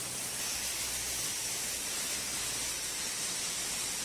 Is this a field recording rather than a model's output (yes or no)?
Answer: yes